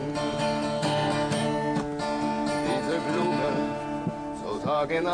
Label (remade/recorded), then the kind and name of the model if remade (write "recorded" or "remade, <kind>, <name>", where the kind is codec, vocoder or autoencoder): remade, vocoder, BigVGAN v2